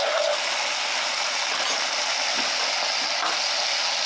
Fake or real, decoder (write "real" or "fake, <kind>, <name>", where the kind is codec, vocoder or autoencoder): real